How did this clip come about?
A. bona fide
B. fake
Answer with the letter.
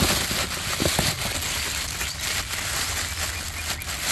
A